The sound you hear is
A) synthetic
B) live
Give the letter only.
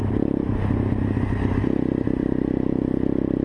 B